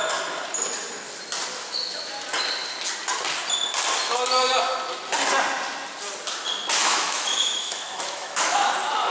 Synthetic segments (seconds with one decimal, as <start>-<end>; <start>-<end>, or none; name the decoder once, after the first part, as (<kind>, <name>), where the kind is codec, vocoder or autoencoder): 1.5-2.1 (autoencoder, DAC-VAE); 6.8-8.7